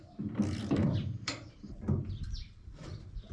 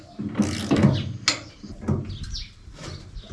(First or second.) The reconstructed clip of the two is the first